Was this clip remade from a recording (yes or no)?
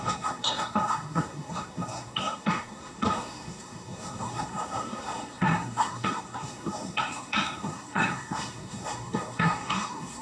yes